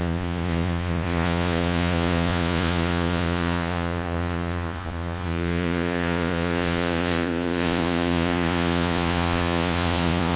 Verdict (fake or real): fake